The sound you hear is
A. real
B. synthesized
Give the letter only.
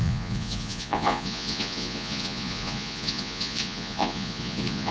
B